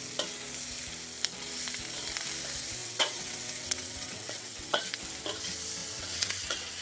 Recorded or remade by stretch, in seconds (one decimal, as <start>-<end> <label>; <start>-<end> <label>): 0.0-2.8 recorded; 2.8-4.8 remade; 4.8-5.8 recorded; 5.8-6.8 remade